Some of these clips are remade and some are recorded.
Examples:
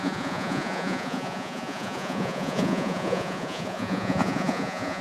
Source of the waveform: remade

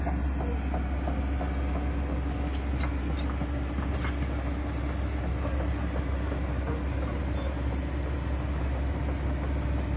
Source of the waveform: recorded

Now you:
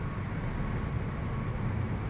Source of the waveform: recorded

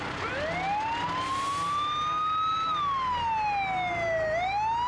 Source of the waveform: recorded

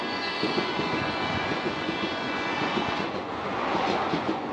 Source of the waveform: remade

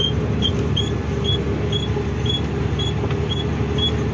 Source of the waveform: recorded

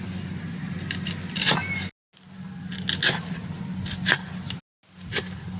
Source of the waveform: recorded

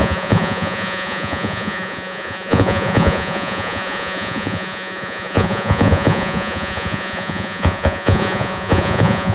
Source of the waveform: remade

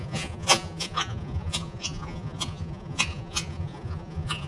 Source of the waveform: remade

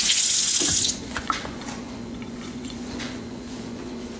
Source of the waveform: remade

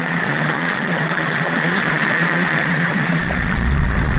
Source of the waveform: remade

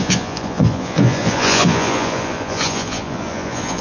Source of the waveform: remade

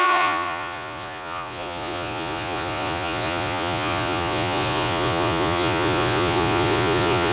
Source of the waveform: remade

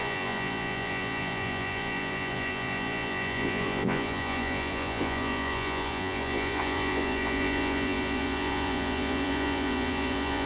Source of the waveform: remade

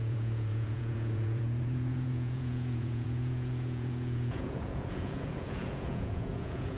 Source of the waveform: remade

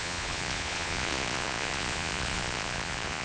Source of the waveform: remade